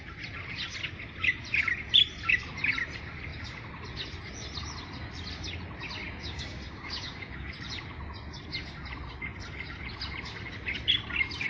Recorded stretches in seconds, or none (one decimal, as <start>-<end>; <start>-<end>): 0.0-6.2; 7.5-11.5